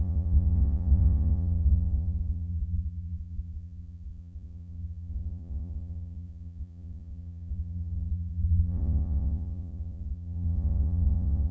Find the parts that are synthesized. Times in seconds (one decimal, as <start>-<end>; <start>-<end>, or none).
0.0-11.5